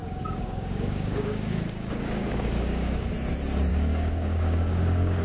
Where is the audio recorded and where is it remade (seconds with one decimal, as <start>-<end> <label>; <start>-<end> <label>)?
0.0-3.1 remade; 3.1-3.7 recorded; 3.7-5.2 remade